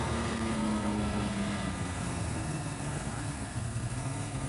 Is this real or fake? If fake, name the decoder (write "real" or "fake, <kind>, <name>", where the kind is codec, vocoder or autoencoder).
fake, codec, SNAC